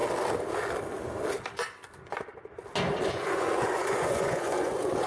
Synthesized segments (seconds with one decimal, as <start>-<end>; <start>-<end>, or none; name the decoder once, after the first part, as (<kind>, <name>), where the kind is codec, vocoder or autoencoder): 3.1-5.1 (vocoder, Vocos)